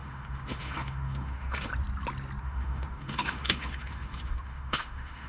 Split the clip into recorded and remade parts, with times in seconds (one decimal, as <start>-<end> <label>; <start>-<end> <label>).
0.0-1.7 remade; 1.7-2.4 recorded; 2.4-5.3 remade